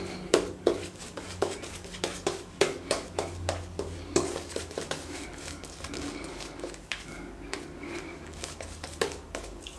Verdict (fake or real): fake